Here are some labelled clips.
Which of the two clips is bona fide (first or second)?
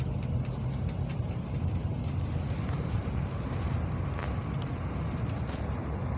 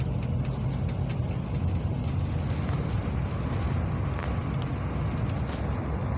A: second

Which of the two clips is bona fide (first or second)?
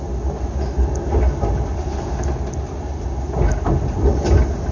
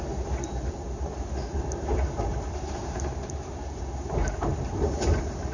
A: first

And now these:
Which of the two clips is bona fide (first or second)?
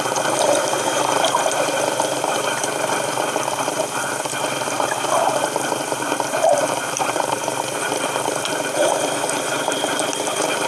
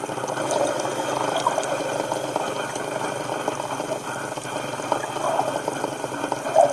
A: second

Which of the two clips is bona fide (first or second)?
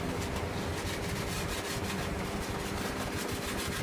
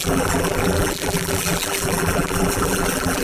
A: first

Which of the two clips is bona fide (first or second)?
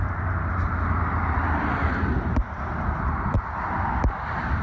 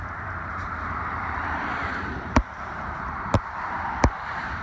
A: first